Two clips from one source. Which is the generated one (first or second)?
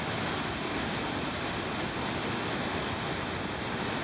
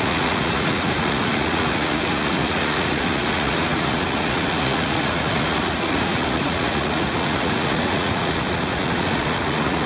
second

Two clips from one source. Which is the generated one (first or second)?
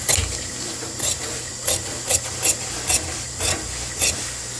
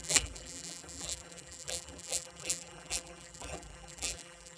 second